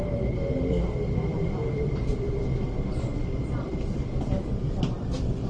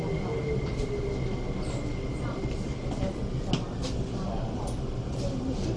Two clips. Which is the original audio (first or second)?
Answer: second